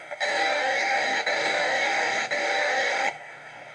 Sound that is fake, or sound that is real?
fake